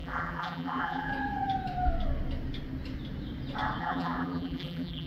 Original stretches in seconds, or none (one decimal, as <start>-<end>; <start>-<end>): 1.1-3.8